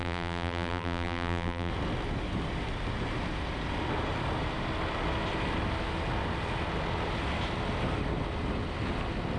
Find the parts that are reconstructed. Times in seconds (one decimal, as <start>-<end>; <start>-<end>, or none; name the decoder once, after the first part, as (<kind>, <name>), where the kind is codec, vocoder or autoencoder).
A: 0.0-1.7 (vocoder, BigVGAN v2)